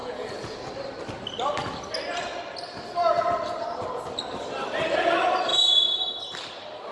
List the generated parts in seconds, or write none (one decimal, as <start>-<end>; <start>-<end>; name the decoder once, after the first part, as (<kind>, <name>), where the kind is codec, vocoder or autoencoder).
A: 0.0-0.7 (vocoder, Vocos); 5.5-6.3